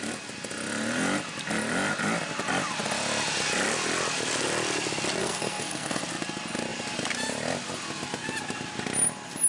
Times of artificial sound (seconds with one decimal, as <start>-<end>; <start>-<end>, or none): 5.2-6.0

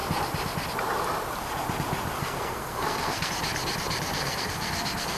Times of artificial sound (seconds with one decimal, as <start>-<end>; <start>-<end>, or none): 2.2-3.3; 4.1-5.2

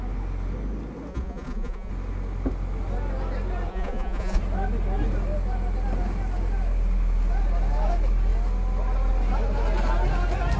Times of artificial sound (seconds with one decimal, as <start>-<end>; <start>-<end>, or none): 1.1-1.9; 3.7-4.4